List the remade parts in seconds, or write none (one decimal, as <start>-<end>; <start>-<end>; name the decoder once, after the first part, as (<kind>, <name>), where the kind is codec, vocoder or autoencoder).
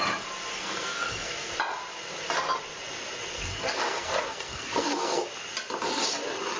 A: 0.5-1.5 (codec, SNAC); 3.3-5.3